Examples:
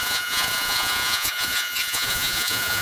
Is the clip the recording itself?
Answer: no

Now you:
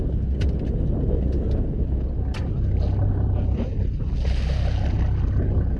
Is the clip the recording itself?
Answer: yes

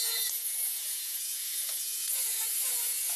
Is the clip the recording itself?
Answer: no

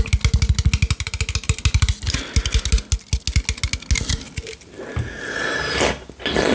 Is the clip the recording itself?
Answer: yes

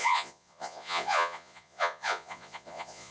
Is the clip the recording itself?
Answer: no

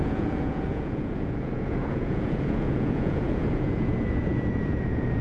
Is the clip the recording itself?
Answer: no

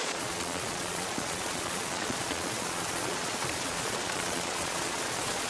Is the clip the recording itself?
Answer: no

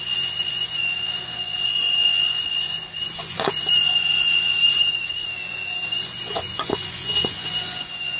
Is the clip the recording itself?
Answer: no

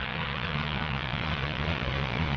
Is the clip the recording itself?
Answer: no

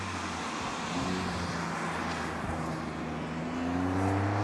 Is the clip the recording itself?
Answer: yes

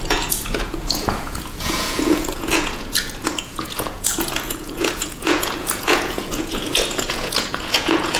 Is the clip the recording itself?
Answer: no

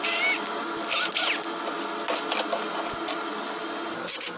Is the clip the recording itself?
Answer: yes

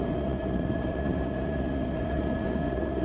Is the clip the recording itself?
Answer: no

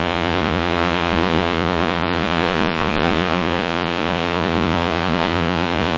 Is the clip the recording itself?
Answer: no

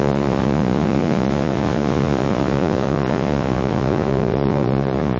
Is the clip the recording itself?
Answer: no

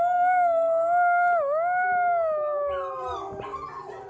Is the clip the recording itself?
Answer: yes